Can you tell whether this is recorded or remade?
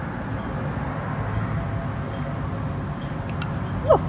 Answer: recorded